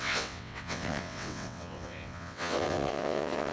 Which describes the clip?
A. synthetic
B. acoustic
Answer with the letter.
A